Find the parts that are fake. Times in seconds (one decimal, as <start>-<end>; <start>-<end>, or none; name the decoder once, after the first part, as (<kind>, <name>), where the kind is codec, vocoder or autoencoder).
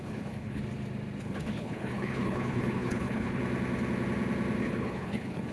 0.0-0.6 (codec, HILCodec); 1.2-3.4; 4.6-5.5